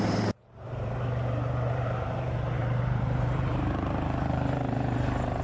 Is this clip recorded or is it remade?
remade